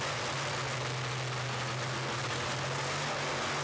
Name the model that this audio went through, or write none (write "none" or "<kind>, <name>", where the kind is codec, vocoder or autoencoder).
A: none